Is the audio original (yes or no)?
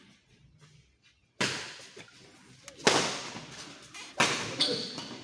yes